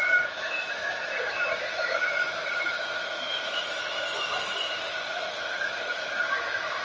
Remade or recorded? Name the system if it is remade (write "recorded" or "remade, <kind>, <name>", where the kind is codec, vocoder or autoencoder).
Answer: remade, autoencoder, DAC-VAE